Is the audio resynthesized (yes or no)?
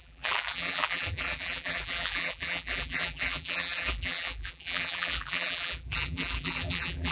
yes